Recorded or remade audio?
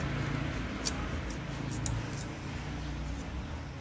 recorded